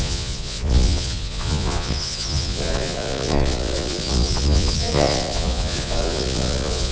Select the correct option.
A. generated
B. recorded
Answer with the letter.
A